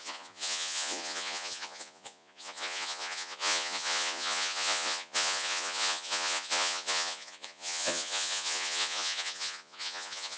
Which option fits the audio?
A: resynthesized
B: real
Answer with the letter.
A